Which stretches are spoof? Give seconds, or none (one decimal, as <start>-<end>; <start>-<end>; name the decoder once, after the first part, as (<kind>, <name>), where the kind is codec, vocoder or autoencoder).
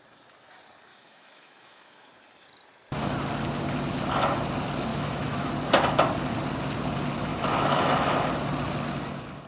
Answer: 0.9-2.1 (autoencoder, DAC-VAE); 4.9-5.5; 7.3-8.3